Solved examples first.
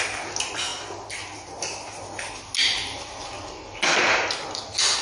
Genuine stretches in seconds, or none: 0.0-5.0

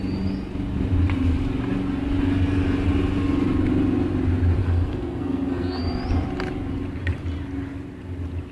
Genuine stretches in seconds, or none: 0.0-4.6; 5.8-8.5

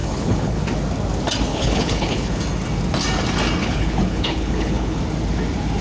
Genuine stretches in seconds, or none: 0.6-1.5; 2.4-3.6; 5.0-5.8

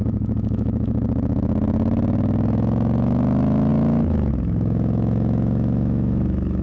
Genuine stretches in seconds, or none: none

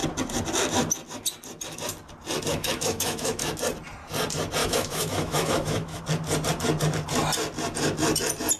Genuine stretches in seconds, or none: 0.0-2.5; 3.5-4.6; 6.0-8.6

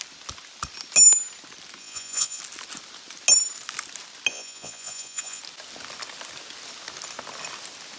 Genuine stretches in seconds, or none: 0.0-1.8; 2.4-4.3; 5.4-8.0

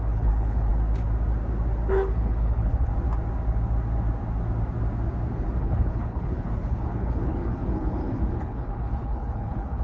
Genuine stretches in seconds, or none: 0.7-1.9; 2.9-5.6

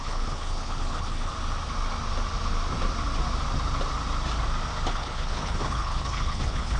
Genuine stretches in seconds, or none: 1.3-4.9